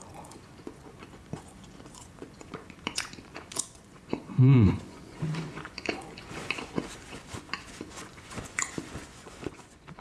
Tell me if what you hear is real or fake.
fake